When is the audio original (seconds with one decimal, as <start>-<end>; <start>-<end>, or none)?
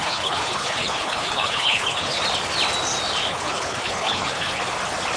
2.2-3.3; 4.6-5.2